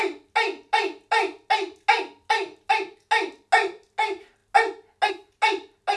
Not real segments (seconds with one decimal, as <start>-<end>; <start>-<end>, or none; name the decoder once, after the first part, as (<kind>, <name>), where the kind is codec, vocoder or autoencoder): none